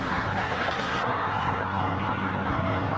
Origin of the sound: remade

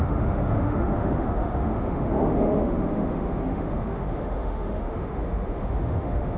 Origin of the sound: remade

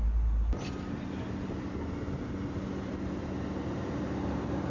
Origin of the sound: recorded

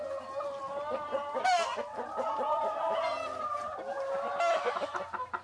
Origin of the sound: recorded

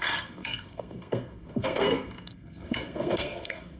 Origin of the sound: remade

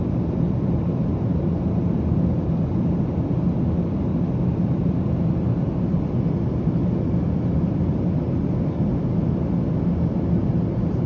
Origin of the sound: recorded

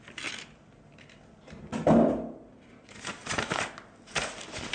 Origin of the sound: recorded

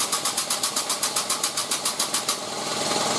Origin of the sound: recorded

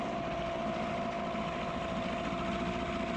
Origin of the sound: recorded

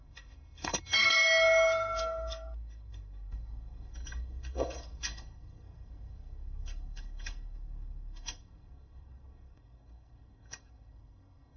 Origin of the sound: remade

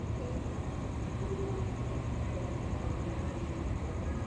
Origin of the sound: remade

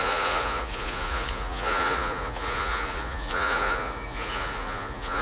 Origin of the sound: remade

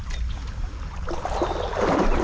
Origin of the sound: recorded